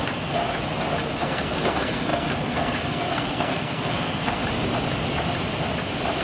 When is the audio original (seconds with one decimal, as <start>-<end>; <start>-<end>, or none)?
0.4-1.2; 4.4-6.2